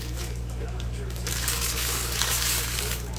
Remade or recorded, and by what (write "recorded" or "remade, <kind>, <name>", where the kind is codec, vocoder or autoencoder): remade, codec, DAC